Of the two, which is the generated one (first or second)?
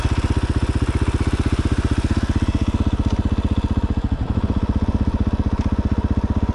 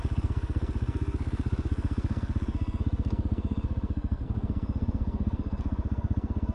second